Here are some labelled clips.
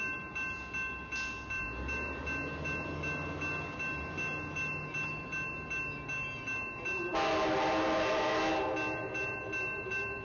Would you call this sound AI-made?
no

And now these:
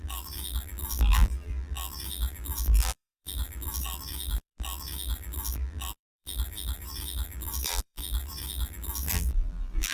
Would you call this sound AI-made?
yes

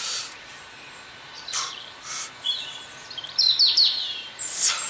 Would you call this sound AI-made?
yes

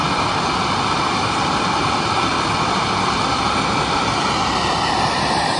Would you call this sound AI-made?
yes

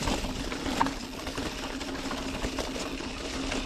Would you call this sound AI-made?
yes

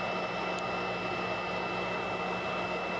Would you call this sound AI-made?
no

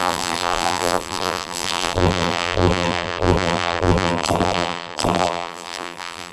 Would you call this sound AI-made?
yes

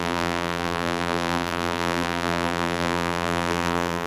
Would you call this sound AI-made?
yes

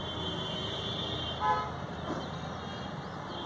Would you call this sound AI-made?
yes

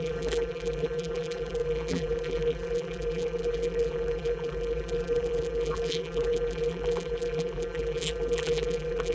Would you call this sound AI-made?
yes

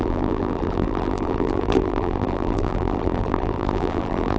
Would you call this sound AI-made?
yes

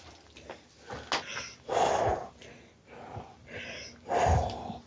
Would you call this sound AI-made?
no